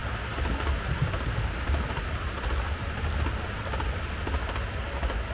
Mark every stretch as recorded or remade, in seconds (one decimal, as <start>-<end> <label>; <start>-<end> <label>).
0.0-5.3 recorded